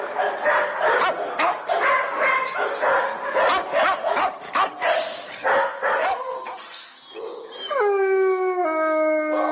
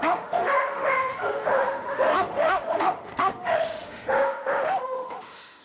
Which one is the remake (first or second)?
second